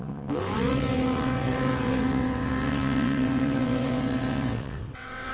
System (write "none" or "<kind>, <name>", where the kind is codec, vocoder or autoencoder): vocoder, WaveNeXt